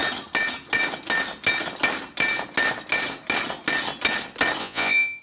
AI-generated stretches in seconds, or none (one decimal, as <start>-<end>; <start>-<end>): 4.6-5.2